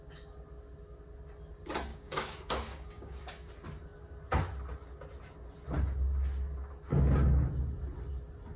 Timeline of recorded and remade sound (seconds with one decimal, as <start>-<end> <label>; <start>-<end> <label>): 0.0-1.9 recorded; 1.9-3.5 remade; 3.5-8.6 recorded